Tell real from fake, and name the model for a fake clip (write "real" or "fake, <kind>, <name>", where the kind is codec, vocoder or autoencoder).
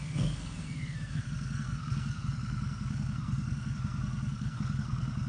fake, codec, SNAC